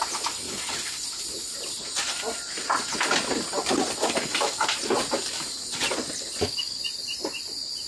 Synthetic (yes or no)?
no